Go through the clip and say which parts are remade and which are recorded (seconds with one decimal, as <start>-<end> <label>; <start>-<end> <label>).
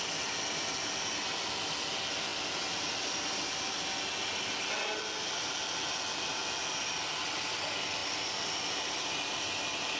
0.0-10.0 recorded